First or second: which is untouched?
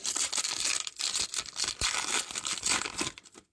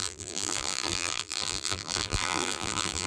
first